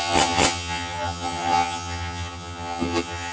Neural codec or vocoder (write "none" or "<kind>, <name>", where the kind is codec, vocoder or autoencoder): vocoder, HiFi-GAN